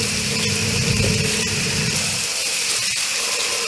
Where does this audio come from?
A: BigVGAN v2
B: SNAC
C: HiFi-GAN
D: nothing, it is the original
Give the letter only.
A